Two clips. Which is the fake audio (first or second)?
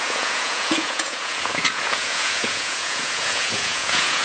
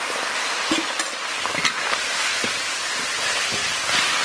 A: first